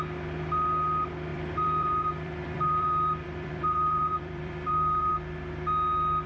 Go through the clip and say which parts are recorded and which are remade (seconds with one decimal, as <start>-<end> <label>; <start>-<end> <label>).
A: 0.0-1.3 recorded; 1.3-5.1 remade; 5.1-6.3 recorded